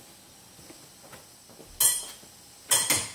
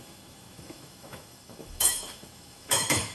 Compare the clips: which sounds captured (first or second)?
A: first